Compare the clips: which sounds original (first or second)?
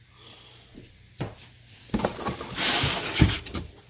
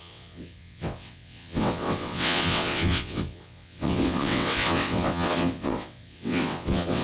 first